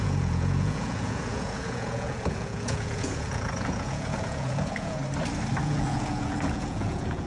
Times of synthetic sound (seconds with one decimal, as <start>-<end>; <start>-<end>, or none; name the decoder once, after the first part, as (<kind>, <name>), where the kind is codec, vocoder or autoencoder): 0.0-5.0 (vocoder, Vocos); 5.6-7.3